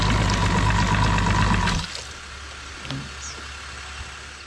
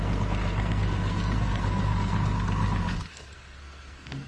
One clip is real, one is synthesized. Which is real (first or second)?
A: first